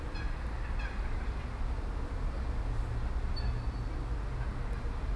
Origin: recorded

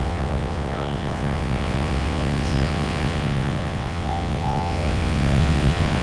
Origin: remade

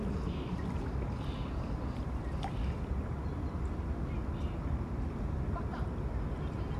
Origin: recorded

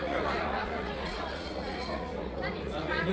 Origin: remade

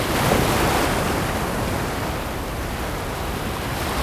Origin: recorded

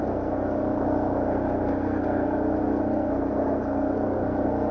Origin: remade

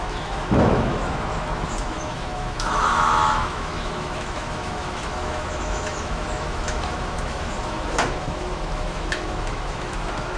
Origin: remade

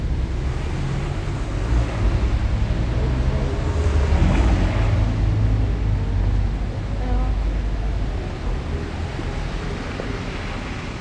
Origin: recorded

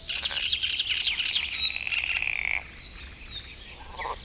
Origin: recorded